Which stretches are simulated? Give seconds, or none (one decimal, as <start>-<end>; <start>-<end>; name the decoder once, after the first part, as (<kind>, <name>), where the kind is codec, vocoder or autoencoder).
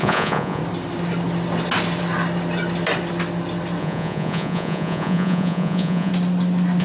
0.0-0.6 (vocoder, Vocos); 3.8-6.1